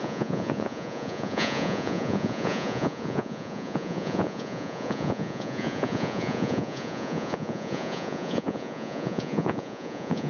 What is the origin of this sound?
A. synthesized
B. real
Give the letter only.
A